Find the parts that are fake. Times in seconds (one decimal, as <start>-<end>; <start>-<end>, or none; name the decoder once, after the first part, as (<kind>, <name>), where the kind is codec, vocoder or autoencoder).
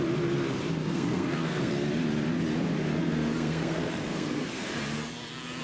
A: 0.8-1.7 (codec, SNAC); 2.9-4.7